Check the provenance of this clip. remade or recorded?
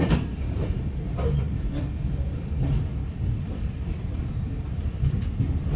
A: remade